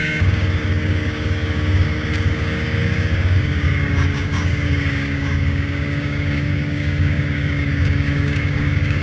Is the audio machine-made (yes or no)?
yes